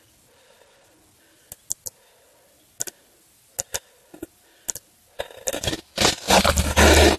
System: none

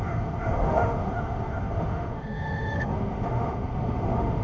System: autoencoder, DAC-VAE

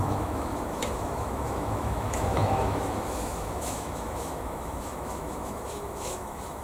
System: autoencoder, DAC-VAE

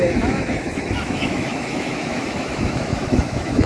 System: autoencoder, DAC-VAE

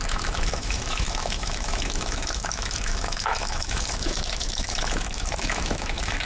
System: autoencoder, DAC-VAE